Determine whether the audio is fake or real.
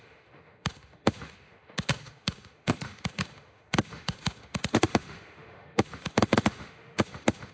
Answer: fake